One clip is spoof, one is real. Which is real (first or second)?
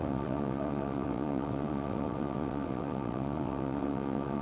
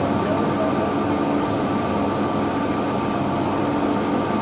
second